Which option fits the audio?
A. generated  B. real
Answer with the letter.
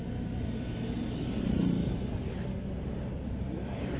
B